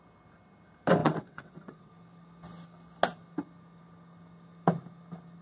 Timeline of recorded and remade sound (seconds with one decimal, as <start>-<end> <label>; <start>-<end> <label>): 0.0-1.0 recorded; 1.0-1.9 remade; 1.9-5.4 recorded